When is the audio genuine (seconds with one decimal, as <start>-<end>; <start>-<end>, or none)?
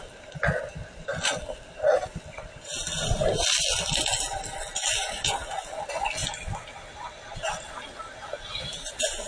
0.0-9.3